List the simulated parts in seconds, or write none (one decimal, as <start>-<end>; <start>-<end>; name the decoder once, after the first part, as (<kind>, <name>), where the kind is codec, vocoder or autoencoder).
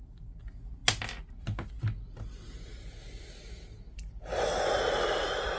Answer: none